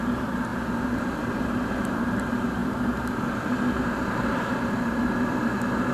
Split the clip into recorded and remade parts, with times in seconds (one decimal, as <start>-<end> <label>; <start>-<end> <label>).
0.0-2.6 remade; 2.6-3.8 recorded; 3.8-5.9 remade